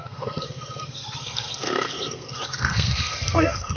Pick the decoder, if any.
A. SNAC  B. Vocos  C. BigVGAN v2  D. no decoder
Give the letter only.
A